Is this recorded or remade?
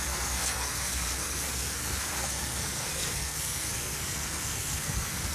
remade